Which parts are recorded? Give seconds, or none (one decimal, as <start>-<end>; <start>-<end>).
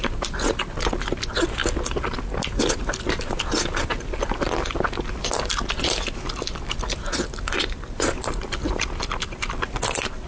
0.0-10.3